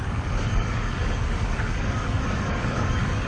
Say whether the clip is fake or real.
fake